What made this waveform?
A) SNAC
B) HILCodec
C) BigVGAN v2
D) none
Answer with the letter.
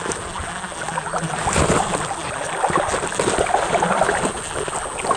D